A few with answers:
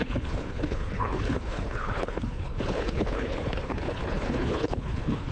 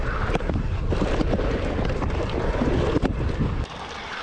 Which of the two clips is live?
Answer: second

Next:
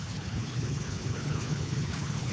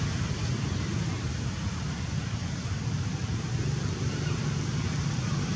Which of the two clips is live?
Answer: second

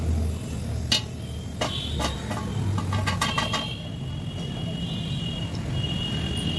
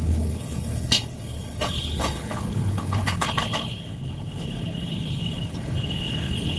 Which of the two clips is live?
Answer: first